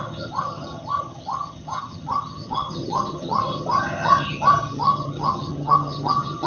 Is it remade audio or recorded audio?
remade